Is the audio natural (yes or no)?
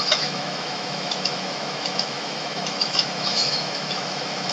no